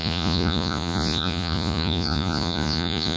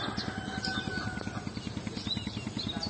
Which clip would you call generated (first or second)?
first